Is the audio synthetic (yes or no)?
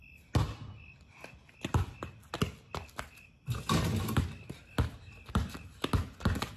no